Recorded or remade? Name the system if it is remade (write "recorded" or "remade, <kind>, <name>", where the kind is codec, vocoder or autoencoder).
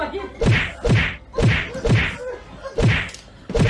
remade, vocoder, BigVGAN v2